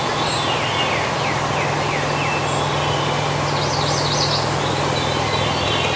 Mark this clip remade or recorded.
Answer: recorded